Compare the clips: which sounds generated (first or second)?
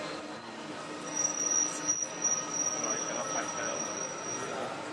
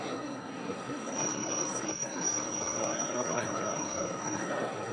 second